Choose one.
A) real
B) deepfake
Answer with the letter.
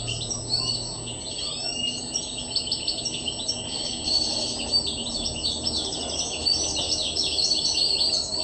A